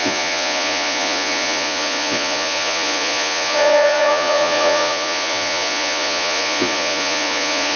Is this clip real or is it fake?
fake